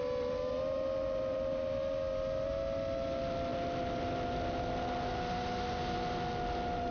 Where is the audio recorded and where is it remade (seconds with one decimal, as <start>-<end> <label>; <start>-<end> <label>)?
0.0-6.9 recorded